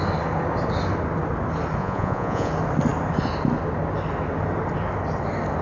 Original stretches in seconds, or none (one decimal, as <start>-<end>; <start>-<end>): 0.0-1.8; 2.5-5.6

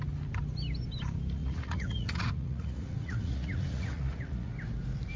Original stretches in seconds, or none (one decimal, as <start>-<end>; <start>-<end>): 0.0-1.4; 4.5-5.2

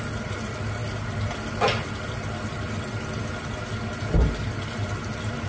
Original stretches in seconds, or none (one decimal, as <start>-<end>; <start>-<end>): 0.0-5.5

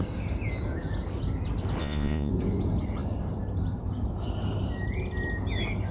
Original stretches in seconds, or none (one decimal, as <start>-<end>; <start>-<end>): 0.0-1.8; 2.3-5.9

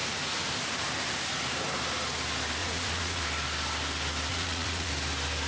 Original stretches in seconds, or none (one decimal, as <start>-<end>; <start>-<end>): 0.5-2.6; 3.2-4.3; 4.9-5.5

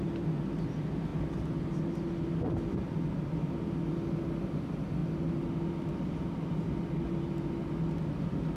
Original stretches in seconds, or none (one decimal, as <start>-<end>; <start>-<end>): 0.0-8.6